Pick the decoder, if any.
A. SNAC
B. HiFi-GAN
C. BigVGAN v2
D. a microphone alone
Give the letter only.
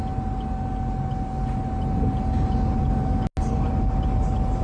D